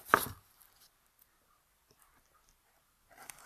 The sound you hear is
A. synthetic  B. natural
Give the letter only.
B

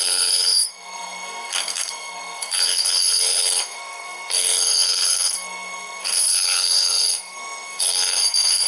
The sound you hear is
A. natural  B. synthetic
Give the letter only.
B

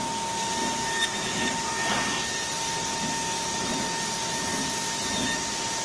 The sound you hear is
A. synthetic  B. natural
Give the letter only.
B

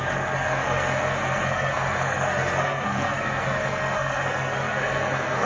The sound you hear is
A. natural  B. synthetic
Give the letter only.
B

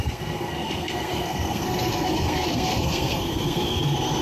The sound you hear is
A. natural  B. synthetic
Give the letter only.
B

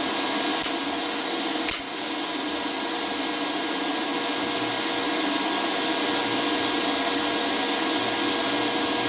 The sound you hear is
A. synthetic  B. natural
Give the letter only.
B